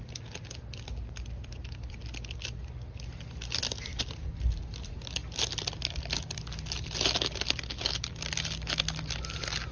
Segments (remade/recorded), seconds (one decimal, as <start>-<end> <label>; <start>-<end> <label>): 0.0-9.7 recorded